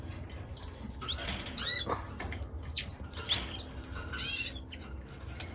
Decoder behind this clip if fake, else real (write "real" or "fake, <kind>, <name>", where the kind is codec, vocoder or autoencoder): real